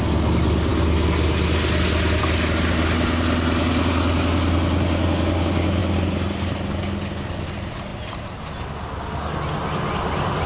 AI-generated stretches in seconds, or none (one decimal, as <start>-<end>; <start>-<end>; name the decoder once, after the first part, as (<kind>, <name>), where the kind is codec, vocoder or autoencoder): 7.9-8.5 (vocoder, BigVGAN v2)